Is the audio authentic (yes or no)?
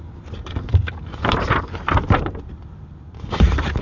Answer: no